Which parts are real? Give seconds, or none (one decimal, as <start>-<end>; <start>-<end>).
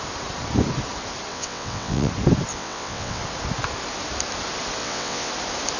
0.0-1.3; 2.1-2.5; 3.2-4.8; 5.3-5.8